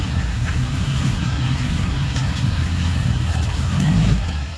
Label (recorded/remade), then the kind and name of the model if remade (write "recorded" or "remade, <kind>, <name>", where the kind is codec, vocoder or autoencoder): remade, codec, SNAC